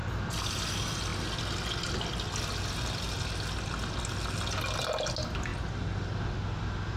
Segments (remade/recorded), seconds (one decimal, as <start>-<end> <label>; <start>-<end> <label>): 0.0-7.0 recorded